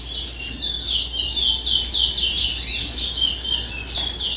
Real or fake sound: real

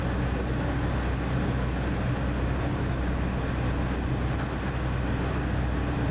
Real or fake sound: real